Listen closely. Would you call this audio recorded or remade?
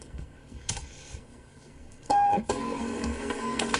remade